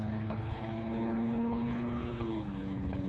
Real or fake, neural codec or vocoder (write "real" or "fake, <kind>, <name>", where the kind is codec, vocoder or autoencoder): fake, codec, HILCodec